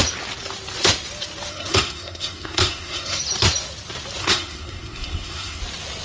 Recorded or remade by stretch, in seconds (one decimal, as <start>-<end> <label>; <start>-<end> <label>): 0.0-1.5 recorded; 1.5-3.2 remade; 3.2-4.2 recorded; 4.2-5.6 remade; 5.6-6.0 recorded